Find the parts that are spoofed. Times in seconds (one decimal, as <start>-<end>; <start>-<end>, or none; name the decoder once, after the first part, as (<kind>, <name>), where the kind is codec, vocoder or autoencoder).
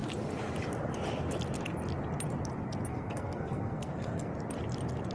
2.9-4.3 (codec, SNAC)